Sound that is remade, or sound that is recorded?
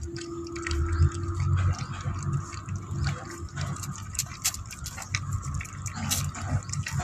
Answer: recorded